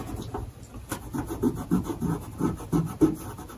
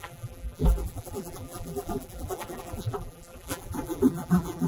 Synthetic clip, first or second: second